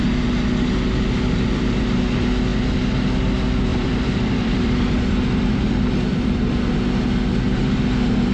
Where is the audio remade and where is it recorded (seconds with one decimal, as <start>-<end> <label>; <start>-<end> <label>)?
0.0-3.7 recorded; 3.7-6.5 remade; 6.5-8.3 recorded